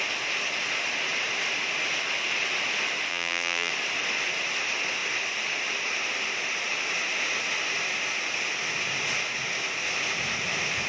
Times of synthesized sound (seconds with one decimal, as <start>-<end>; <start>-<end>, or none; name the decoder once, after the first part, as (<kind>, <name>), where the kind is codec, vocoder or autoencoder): 3.1-3.7 (vocoder, BigVGAN v2)